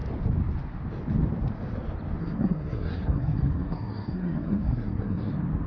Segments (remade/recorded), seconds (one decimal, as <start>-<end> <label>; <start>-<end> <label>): 0.0-2.2 recorded; 2.2-5.3 remade; 5.3-5.7 recorded